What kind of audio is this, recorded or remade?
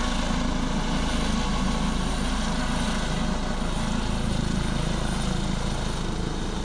recorded